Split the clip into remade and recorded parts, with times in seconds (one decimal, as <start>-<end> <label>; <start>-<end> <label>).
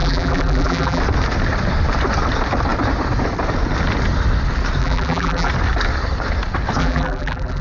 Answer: 0.0-1.0 remade; 1.0-4.8 recorded; 4.8-5.5 remade; 5.5-6.8 recorded; 6.8-7.6 remade